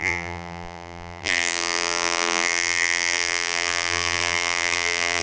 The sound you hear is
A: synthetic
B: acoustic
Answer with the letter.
A